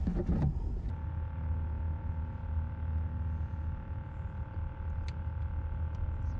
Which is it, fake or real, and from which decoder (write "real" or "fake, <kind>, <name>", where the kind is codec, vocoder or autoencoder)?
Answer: real